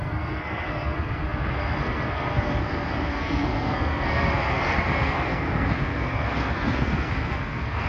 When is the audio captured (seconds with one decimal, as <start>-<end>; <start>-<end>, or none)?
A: none